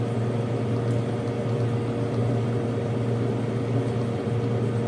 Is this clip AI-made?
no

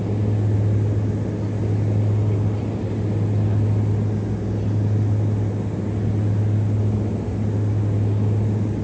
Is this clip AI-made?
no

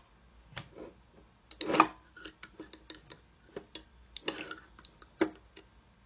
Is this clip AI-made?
no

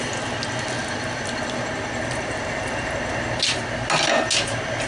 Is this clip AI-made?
no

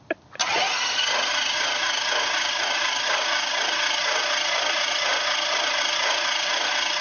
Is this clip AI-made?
no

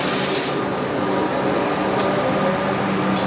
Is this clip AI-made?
no